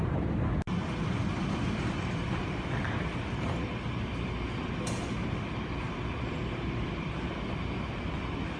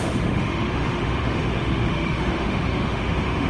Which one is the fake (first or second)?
second